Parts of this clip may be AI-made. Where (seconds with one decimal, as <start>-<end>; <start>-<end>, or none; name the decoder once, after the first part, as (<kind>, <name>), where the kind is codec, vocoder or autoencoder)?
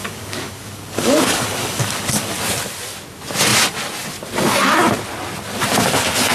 0.0-2.4 (codec, DAC)